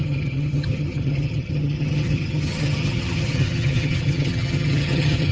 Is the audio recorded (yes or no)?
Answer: no